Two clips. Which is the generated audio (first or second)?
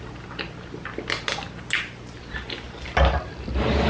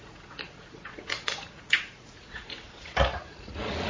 second